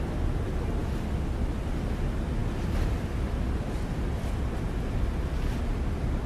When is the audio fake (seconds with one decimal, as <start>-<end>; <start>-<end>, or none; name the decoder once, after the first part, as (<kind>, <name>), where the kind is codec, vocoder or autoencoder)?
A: none

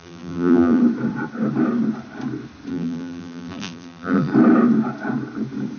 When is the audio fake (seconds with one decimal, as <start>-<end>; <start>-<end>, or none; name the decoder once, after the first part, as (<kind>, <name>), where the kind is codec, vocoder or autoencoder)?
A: 0.0-0.8 (vocoder, BigVGAN v2); 2.7-4.3

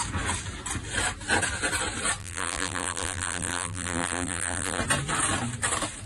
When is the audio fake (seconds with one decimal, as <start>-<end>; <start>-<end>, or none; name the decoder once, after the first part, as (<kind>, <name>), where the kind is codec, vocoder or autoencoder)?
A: 2.2-4.8 (vocoder, BigVGAN v2)

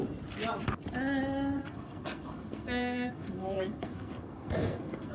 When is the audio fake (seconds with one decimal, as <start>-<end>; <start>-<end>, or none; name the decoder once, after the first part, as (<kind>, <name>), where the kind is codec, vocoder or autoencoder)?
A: 1.6-5.1 (codec, SNAC)

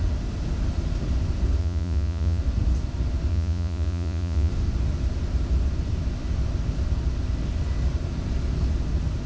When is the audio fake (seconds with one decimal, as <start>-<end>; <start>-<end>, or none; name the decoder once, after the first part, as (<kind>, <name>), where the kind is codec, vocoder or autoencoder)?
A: 1.6-2.4 (vocoder, Vocos); 3.3-4.5

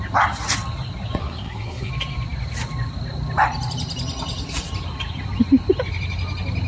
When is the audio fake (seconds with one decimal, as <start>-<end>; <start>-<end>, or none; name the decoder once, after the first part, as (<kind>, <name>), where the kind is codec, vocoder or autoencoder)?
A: 1.2-1.9 (codec, SNAC)

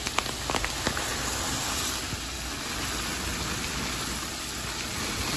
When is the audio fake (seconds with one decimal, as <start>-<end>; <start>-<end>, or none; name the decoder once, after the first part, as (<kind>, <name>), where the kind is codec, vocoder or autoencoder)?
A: none

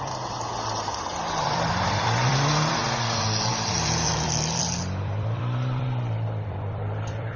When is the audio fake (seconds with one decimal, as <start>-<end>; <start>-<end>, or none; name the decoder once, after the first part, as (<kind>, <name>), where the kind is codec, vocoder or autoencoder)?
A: 0.0-0.5 (vocoder, BigVGAN v2); 1.4-2.8; 3.5-7.4